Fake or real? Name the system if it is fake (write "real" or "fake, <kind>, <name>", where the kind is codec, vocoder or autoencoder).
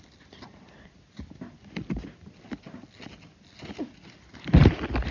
real